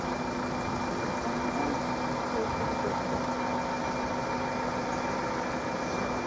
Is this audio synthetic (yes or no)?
no